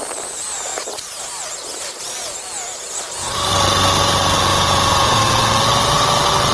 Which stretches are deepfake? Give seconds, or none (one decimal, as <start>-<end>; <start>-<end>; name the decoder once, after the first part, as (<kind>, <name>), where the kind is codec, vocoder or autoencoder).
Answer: 4.5-5.2 (vocoder, Vocos)